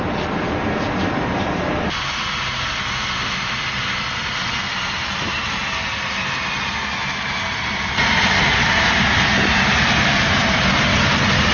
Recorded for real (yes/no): yes